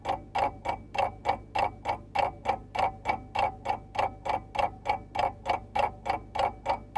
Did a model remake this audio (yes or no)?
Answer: no